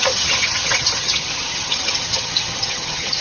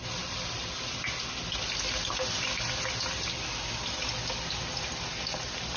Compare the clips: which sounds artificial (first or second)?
first